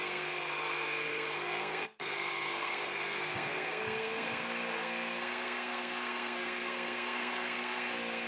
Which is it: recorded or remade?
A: remade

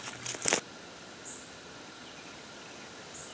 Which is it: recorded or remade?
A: recorded